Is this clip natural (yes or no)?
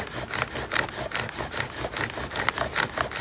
yes